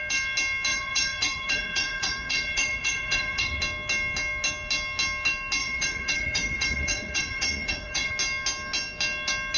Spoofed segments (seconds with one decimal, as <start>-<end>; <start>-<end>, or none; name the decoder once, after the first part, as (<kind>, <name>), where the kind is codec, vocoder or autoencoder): 0.7-3.6 (vocoder, Vocos); 5.6-8.1